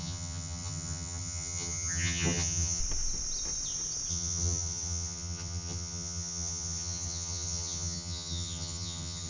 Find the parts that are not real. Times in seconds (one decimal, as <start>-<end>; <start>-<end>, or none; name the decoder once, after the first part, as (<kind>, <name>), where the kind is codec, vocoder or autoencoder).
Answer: 0.0-2.8 (vocoder, HiFi-GAN); 4.1-9.3